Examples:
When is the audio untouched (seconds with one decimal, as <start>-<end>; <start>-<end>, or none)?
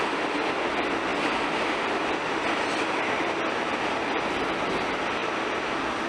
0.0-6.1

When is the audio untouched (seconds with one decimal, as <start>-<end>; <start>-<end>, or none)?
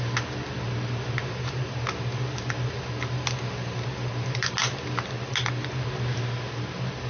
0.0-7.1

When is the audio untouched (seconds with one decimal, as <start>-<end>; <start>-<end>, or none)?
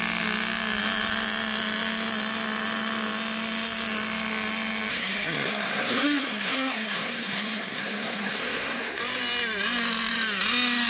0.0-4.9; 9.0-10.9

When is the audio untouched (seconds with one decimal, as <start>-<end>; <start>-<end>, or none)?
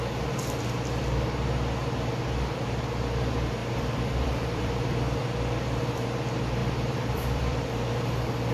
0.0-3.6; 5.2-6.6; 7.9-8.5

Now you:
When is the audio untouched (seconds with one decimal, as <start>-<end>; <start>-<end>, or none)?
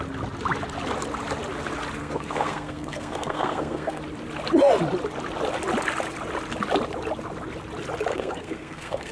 0.0-2.0; 4.0-8.1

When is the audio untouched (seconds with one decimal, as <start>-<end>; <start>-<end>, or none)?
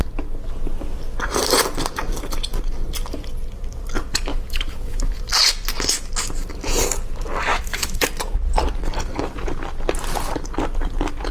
0.0-4.3; 5.2-7.5; 8.1-11.3